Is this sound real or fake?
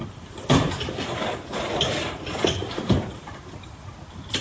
fake